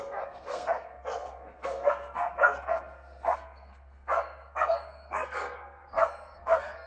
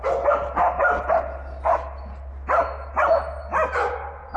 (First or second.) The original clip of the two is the second